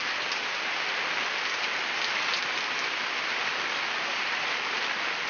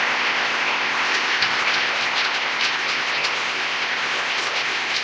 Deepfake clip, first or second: second